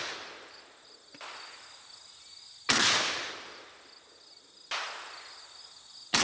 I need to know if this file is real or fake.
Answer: real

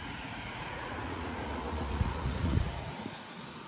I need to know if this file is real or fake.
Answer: fake